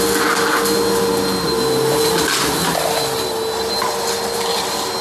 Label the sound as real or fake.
real